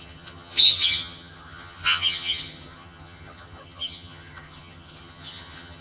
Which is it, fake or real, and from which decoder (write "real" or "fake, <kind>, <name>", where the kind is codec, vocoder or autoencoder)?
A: fake, vocoder, HiFi-GAN